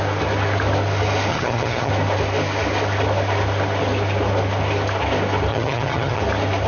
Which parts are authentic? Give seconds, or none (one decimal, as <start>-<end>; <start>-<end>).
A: 0.0-1.3; 1.9-5.5; 6.2-6.7